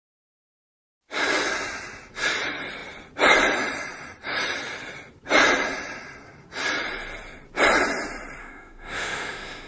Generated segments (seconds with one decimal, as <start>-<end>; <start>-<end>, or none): 8.4-9.7